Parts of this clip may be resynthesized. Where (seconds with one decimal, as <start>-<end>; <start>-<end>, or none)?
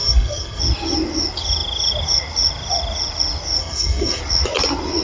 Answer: 0.0-0.6; 3.6-4.2